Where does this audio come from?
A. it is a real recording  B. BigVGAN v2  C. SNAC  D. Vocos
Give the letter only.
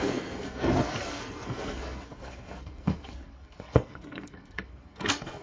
C